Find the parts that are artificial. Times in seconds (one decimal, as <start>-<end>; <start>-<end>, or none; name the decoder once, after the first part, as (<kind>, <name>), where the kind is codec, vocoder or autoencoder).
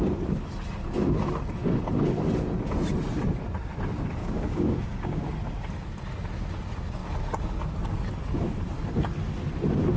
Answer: 4.2-5.3 (codec, DAC)